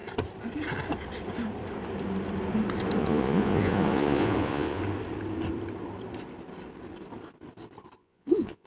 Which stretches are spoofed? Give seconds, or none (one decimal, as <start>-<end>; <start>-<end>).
3.0-4.8; 8.0-8.7